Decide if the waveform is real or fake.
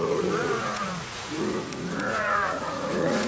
fake